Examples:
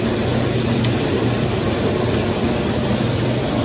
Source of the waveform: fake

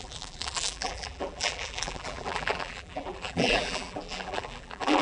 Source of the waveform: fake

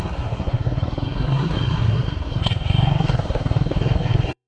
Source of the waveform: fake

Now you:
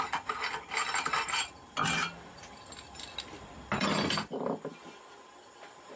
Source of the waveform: real